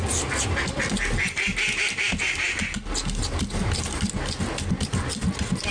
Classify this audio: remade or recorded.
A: recorded